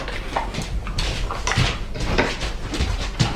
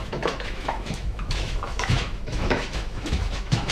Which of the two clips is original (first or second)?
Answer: first